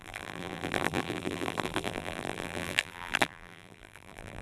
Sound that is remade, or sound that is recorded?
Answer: remade